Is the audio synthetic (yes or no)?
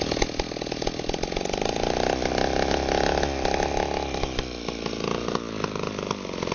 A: no